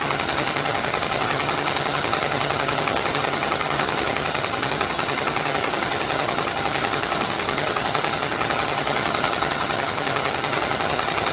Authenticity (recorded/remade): remade